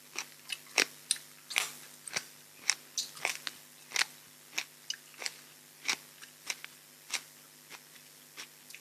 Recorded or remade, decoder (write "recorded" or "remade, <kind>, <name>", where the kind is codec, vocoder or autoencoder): recorded